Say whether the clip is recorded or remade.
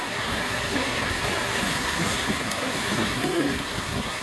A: remade